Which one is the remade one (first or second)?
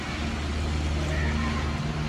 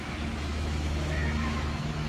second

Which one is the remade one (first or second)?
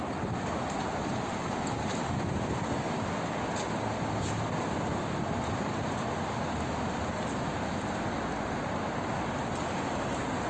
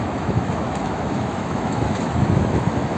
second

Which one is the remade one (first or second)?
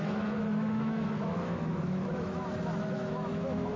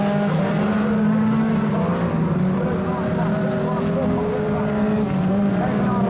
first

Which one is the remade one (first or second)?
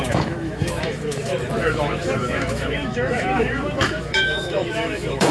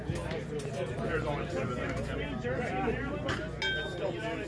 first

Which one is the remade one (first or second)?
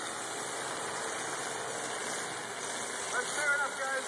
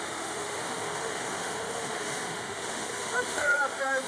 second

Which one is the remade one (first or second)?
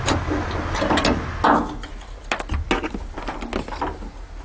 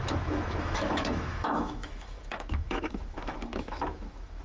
second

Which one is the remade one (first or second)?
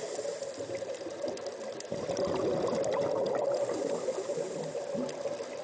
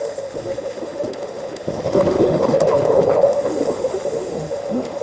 second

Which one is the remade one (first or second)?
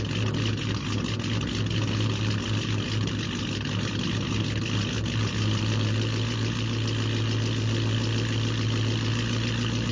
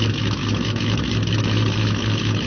second